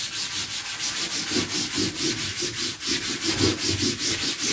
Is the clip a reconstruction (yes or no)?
no